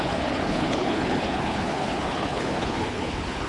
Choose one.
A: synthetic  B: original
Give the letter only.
A